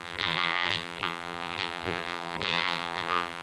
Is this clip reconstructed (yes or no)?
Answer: yes